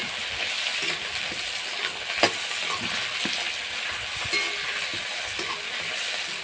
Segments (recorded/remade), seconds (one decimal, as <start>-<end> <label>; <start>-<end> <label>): 0.0-6.4 recorded